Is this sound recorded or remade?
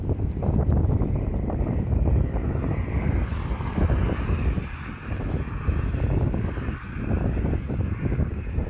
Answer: recorded